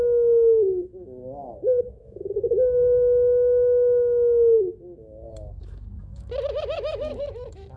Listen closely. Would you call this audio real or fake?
fake